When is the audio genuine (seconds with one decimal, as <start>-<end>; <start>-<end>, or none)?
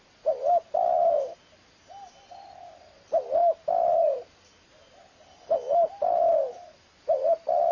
0.0-7.7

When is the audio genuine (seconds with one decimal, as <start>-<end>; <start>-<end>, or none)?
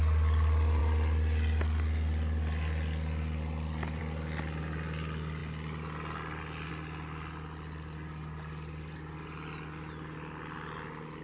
0.0-11.2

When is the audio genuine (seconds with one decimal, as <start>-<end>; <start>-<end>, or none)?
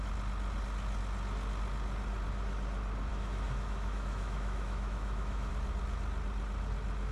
0.0-3.1; 5.5-7.1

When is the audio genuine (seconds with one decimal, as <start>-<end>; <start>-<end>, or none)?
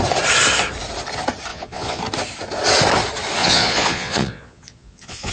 0.0-1.5; 2.0-3.4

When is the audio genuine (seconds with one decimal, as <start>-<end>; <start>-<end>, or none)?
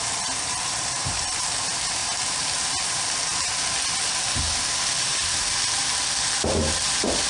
2.0-6.4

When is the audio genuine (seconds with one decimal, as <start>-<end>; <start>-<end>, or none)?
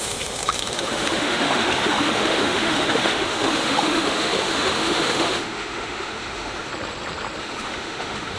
6.7-7.4